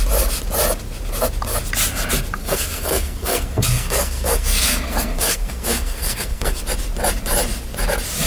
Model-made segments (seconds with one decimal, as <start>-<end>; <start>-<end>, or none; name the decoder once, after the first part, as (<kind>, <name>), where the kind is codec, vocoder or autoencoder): 2.4-6.6 (codec, SNAC)